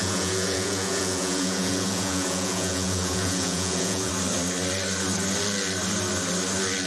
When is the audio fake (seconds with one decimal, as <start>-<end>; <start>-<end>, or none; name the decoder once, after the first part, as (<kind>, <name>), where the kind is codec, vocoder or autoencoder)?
0.0-4.1 (vocoder, Vocos)